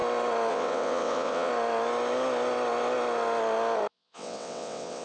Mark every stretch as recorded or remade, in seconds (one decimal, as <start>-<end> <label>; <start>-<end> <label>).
0.0-0.5 recorded; 0.5-1.5 remade; 1.5-3.9 recorded; 3.9-5.0 remade